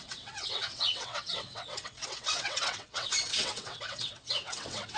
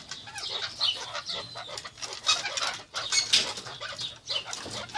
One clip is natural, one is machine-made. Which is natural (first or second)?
second